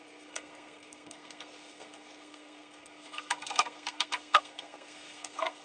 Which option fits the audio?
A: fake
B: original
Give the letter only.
A